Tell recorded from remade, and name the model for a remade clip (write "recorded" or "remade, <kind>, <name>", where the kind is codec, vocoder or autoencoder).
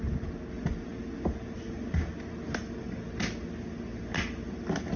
recorded